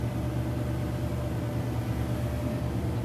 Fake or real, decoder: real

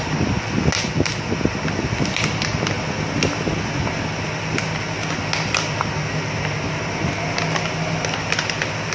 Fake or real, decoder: real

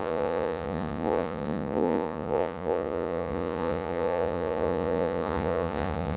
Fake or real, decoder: fake, vocoder, Vocos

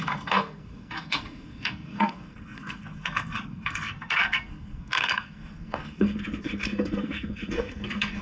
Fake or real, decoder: fake, codec, SNAC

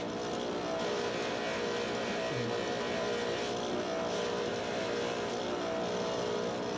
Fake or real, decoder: real